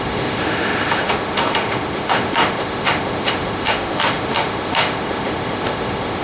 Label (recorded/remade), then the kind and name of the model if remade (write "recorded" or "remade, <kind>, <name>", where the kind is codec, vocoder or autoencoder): remade, autoencoder, DAC-VAE